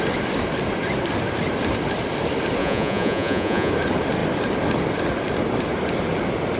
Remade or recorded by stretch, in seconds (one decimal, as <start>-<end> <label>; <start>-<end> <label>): 0.0-2.6 recorded; 2.6-3.7 remade; 3.7-6.6 recorded